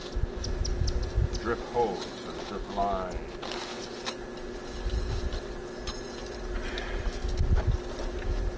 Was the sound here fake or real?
real